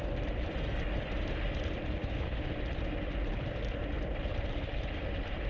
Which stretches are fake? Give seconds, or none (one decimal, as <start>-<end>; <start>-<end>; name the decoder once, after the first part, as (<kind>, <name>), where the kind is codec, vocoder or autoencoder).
2.0-2.5 (autoencoder, DAC-VAE)